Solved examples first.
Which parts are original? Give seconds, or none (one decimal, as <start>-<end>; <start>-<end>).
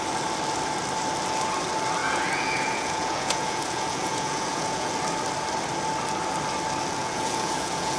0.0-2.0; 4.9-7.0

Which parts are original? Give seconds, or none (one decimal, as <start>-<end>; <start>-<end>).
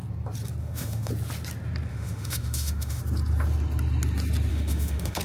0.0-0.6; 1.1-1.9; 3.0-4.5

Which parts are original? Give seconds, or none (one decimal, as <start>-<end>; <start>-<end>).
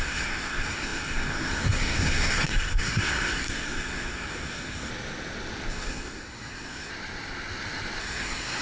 4.9-5.7; 6.9-8.0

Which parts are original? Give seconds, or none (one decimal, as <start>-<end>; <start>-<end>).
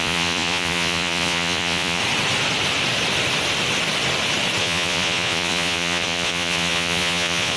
2.0-4.6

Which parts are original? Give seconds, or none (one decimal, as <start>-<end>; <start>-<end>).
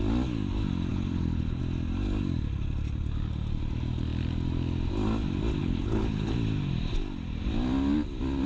0.0-0.9; 1.6-5.6; 6.3-8.5